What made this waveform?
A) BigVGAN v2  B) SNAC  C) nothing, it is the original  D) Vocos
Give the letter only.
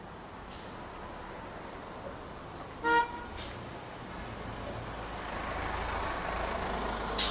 C